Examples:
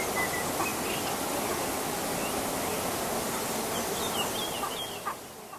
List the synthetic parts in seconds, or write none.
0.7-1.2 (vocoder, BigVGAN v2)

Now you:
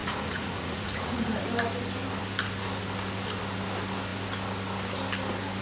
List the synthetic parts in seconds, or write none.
0.0-1.4 (vocoder, Vocos)

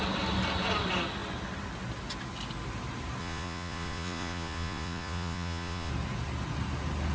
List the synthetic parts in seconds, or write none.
3.2-5.9 (vocoder, Vocos)

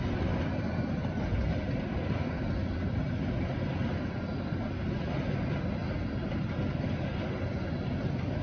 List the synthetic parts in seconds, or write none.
none

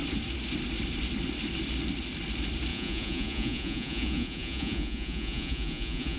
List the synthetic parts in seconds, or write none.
2.7-6.2 (vocoder, Vocos)

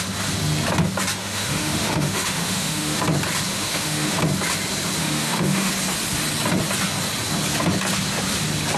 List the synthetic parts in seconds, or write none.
1.2-3.0 (autoencoder, DAC-VAE); 3.5-4.2; 5.0-5.7

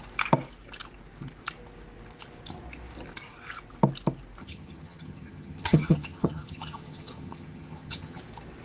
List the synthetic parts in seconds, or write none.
4.4-8.2 (vocoder, HiFi-GAN)